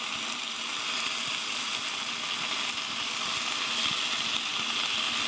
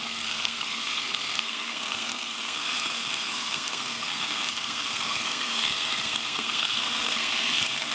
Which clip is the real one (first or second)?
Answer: first